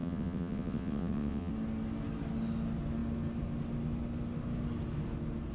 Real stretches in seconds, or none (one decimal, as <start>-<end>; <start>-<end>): 1.5-5.5